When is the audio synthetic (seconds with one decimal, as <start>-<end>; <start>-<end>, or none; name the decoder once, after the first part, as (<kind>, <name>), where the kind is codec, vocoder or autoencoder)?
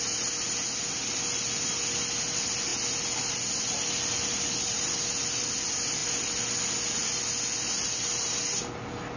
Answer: none